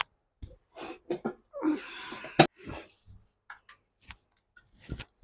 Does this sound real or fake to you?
real